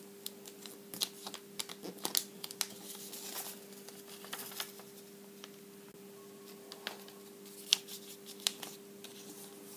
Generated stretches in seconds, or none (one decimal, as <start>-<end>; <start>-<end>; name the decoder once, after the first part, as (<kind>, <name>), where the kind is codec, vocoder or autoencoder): 7.7-8.6 (vocoder, BigVGAN v2)